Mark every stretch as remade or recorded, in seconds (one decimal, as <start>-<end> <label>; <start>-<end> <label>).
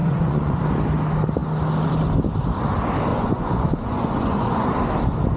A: 0.0-0.6 remade; 0.6-3.1 recorded; 3.1-4.7 remade; 4.7-5.4 recorded